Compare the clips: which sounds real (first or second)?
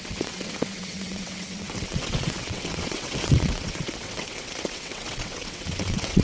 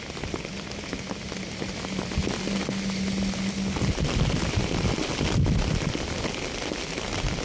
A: second